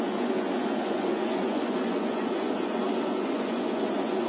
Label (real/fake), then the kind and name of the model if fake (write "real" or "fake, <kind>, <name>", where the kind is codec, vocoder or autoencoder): fake, vocoder, Vocos